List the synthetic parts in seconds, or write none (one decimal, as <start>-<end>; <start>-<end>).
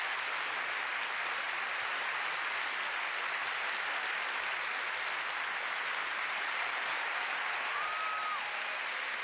6.2-7.7